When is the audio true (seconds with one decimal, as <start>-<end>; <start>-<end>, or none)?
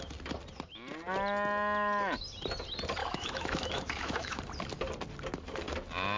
0.0-3.0; 4.4-6.2